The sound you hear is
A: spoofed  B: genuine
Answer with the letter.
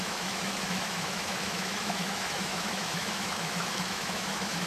A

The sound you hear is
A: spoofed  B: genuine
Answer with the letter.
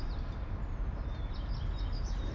A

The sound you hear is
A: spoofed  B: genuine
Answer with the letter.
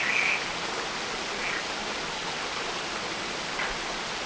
B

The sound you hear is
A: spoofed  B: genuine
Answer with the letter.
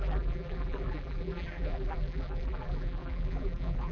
A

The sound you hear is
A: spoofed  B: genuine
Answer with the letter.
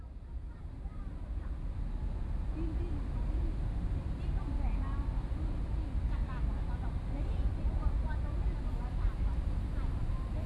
B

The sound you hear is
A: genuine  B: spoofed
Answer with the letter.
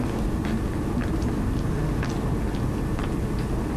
A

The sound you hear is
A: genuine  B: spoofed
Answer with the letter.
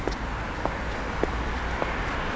A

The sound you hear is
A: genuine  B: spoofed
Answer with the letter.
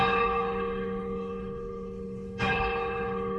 B